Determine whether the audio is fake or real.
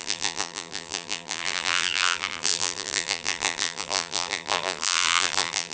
fake